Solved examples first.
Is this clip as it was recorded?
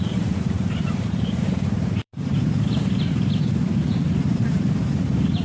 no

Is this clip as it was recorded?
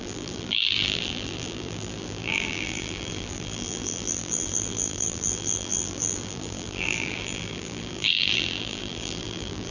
no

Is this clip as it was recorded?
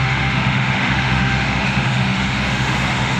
no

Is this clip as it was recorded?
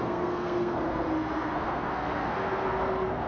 no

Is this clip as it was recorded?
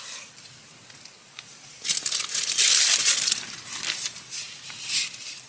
yes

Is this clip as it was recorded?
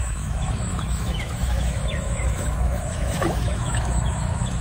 no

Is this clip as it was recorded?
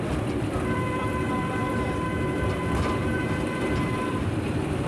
no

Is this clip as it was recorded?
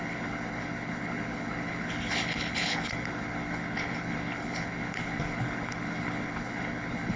no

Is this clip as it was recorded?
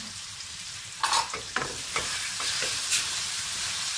no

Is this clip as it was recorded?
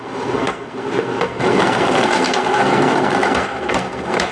no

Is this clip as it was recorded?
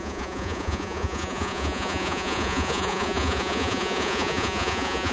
no